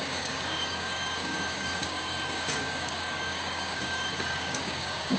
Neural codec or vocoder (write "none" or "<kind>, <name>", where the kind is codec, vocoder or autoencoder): codec, DAC